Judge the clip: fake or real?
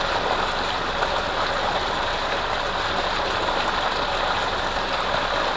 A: real